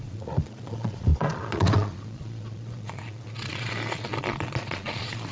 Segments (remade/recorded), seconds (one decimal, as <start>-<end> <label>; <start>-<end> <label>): 0.0-5.3 remade

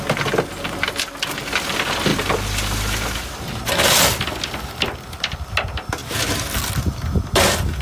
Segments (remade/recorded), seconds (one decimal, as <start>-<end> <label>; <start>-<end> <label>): 0.0-7.8 recorded

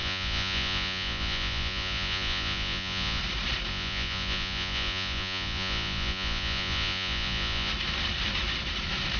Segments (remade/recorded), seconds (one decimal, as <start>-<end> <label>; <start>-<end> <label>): 0.0-3.2 remade; 3.2-3.7 recorded; 3.7-7.7 remade; 7.7-9.2 recorded

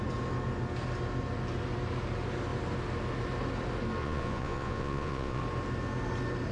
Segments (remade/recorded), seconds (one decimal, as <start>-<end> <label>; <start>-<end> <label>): 0.0-4.0 recorded; 4.0-5.4 remade; 5.4-6.5 recorded